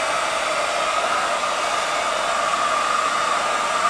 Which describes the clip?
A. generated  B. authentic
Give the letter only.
B